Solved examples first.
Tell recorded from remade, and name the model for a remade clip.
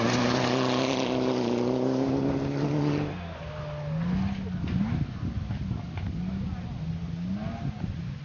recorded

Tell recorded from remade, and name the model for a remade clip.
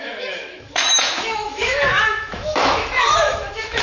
remade, autoencoder, DAC-VAE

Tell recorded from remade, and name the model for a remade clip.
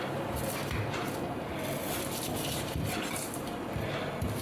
recorded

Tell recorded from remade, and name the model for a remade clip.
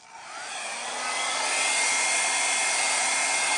recorded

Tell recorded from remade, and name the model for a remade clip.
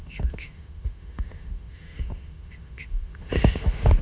remade, autoencoder, DAC-VAE